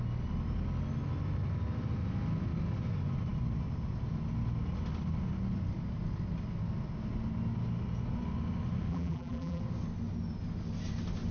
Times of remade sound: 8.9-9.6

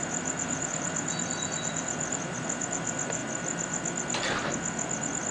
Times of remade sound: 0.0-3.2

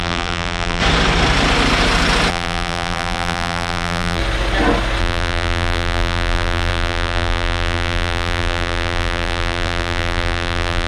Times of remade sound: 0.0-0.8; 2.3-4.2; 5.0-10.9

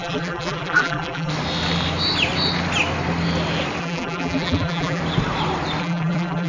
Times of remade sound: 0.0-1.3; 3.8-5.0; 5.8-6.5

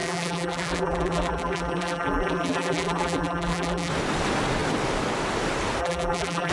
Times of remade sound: 0.0-3.9; 5.8-6.5

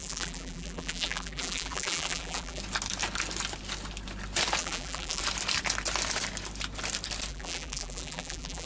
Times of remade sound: 0.0-2.6; 4.6-5.2; 7.3-8.7

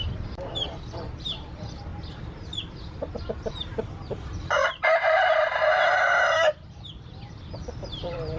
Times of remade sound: 0.0-8.4